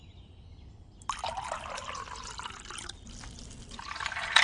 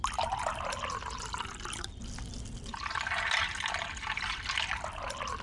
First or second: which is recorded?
second